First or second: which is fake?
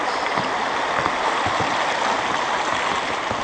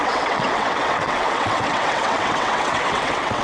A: second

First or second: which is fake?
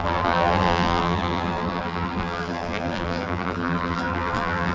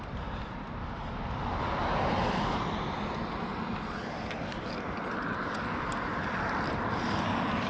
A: first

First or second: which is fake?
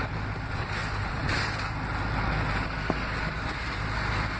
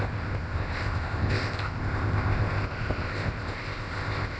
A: second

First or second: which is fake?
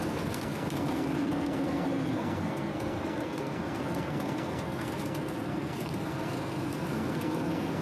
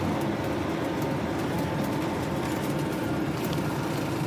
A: first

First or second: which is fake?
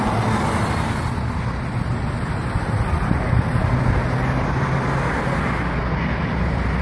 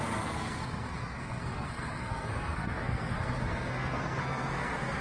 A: second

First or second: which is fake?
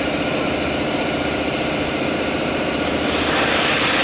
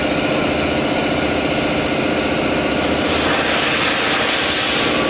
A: first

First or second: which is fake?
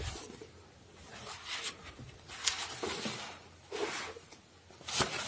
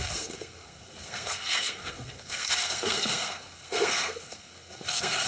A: second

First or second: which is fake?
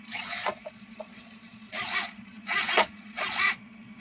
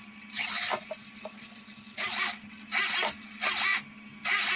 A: first